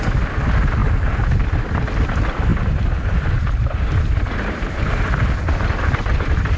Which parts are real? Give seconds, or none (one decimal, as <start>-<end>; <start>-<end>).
0.0-2.5